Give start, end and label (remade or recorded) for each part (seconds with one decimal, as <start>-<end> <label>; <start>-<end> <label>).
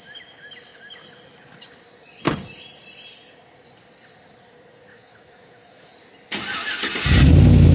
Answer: 0.0-4.9 recorded; 4.9-5.9 remade; 5.9-7.7 recorded